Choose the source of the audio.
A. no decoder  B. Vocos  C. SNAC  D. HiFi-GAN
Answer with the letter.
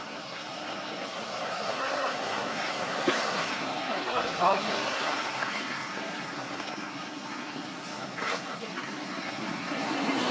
C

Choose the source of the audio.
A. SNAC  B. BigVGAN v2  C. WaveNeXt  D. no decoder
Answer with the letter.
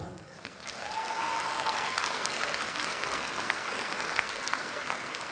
A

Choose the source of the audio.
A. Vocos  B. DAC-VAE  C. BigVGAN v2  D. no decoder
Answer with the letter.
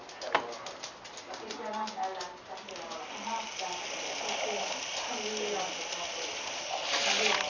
D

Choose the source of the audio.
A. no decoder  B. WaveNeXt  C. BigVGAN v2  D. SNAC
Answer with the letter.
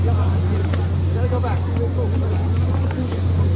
A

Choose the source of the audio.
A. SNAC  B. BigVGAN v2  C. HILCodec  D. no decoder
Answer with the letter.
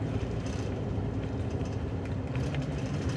B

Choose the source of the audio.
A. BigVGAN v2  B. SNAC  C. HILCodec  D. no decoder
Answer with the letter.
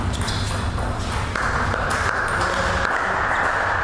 D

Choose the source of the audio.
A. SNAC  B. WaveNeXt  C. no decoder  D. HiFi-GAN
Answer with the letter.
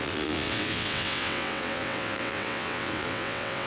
B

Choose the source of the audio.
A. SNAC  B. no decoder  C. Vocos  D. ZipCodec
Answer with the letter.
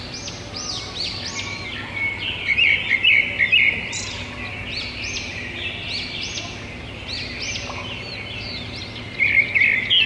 B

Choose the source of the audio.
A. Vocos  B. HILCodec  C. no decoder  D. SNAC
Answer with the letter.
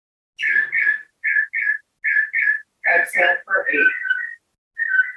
C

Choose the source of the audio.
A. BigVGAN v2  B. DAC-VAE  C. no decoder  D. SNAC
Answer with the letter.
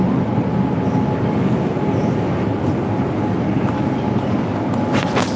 C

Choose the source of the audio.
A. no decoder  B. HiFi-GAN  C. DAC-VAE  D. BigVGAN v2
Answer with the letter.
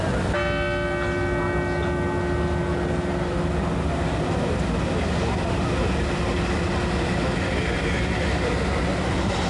A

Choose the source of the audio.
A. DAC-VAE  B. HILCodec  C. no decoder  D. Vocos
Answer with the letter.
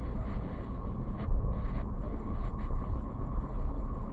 B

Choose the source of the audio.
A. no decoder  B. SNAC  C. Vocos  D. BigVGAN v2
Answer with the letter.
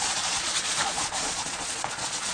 C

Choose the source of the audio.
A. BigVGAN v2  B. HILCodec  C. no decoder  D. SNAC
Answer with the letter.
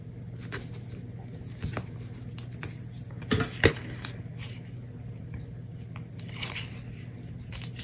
C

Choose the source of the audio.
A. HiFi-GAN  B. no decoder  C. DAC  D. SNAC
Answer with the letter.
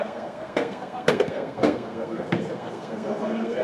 D